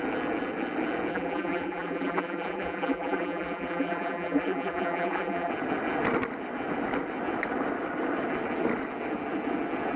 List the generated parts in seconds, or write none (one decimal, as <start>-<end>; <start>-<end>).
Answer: 1.1-5.5